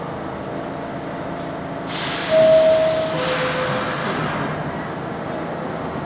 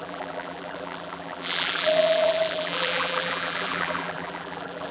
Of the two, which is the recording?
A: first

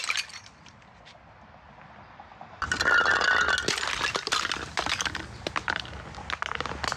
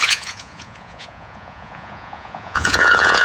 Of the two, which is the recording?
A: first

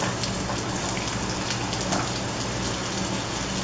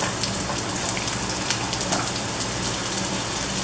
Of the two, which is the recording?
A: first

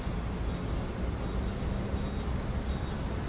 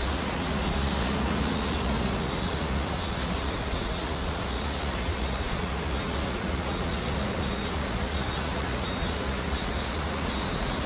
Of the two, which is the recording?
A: first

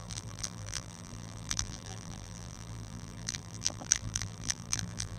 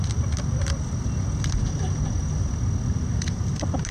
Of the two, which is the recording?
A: second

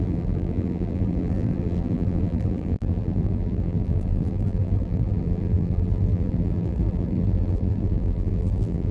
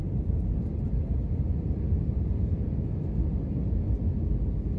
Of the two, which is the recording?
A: second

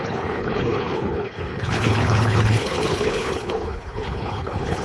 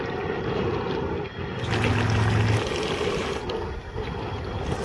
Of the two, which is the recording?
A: second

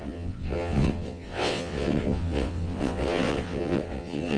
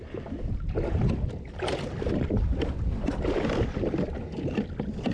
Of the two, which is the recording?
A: second